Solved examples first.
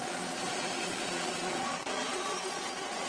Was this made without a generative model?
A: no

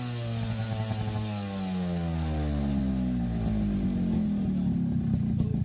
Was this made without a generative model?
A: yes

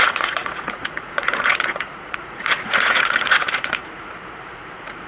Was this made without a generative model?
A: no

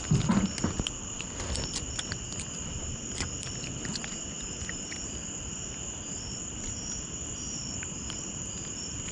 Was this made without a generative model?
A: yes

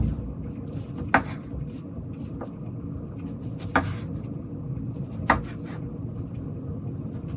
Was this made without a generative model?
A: yes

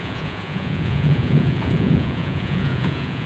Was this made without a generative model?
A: no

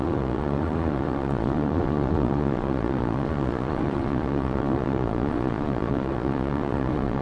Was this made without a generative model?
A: no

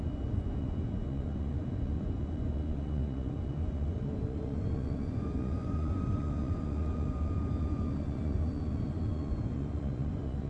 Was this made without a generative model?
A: no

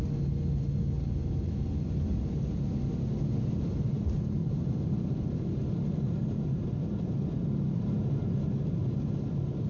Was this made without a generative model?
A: yes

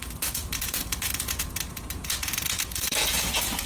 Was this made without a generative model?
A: no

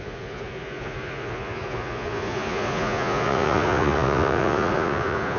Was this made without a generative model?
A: no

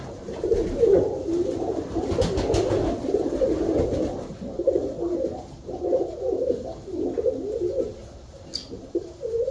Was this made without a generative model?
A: yes